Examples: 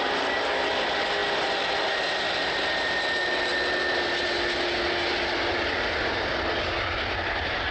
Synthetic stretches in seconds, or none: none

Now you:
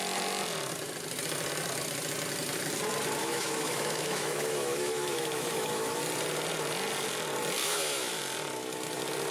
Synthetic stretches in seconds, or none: 3.2-6.0; 7.6-8.2

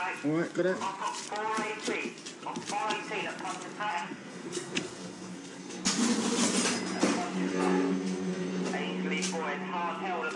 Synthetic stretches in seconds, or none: 3.9-5.8; 7.5-8.6

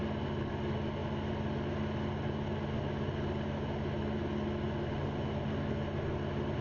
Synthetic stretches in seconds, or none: none